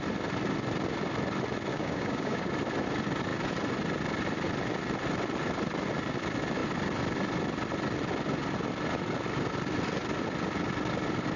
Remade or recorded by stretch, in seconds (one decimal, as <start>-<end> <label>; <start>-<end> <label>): 0.0-1.7 recorded; 1.7-2.5 remade; 2.5-11.4 recorded

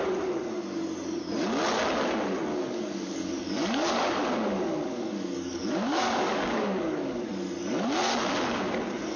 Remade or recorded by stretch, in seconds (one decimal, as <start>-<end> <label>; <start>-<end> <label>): 0.0-2.5 recorded; 2.5-7.3 remade; 7.3-9.2 recorded

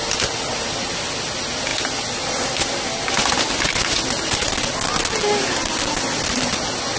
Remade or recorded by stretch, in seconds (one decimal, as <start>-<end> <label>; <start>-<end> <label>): 0.0-7.0 recorded